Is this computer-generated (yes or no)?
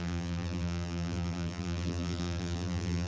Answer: yes